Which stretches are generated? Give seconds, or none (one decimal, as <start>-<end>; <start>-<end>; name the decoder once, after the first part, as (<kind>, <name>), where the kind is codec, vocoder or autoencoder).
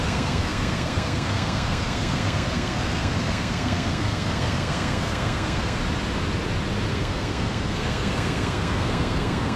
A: 0.0-5.8 (codec, SNAC); 6.9-9.6